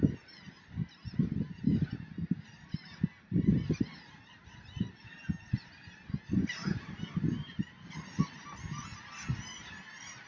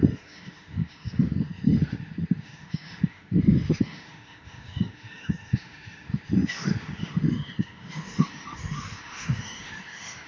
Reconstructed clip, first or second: second